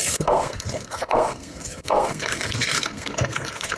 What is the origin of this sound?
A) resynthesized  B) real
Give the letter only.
A